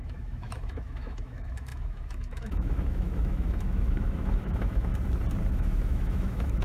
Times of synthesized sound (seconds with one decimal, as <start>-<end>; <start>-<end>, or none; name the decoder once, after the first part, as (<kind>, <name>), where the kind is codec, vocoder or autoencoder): 0.0-4.9 (autoencoder, DAC-VAE); 5.5-6.6